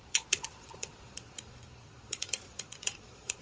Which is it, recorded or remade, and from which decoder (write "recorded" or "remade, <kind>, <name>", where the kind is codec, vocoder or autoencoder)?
remade, vocoder, Vocos